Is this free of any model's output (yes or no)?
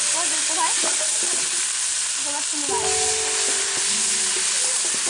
yes